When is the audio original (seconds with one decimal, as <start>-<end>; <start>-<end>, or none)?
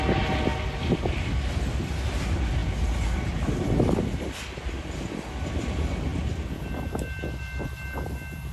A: 0.0-8.5